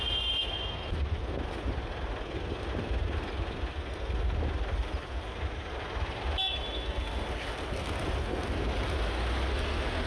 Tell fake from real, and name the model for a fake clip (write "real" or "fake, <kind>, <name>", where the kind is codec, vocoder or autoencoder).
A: real